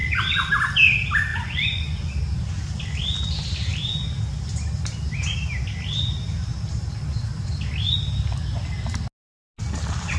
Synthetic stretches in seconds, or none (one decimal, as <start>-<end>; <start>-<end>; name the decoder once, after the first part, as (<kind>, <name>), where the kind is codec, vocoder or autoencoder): 0.0-0.5 (vocoder, Vocos); 1.3-2.1